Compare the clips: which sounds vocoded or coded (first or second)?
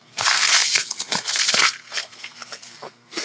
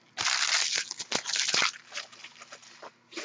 first